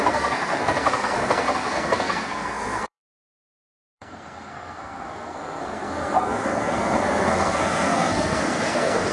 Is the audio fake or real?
fake